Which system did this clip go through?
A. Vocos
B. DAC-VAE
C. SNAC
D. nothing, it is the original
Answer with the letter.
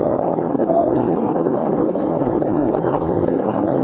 C